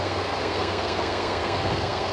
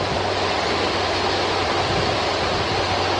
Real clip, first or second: second